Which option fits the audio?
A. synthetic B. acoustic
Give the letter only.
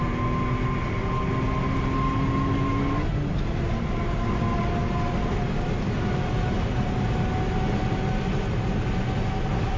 B